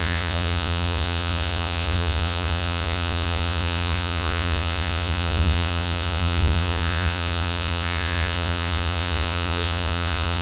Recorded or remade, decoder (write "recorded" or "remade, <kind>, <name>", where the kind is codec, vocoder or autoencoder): remade, vocoder, Vocos